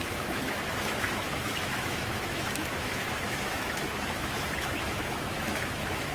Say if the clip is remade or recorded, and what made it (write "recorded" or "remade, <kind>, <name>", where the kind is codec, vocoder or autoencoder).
remade, autoencoder, DAC-VAE